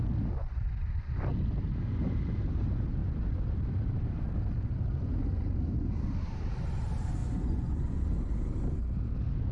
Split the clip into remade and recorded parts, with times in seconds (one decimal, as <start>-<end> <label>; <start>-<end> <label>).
0.0-7.2 recorded; 7.2-8.3 remade; 8.3-9.5 recorded